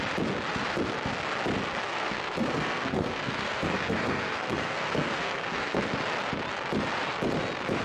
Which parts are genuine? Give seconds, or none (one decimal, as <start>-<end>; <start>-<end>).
0.0-1.8; 5.8-7.8